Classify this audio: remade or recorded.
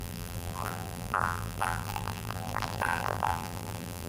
remade